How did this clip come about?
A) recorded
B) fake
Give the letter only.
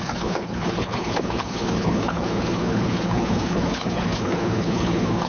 B